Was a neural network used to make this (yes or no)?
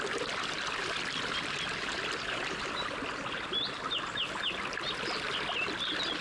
no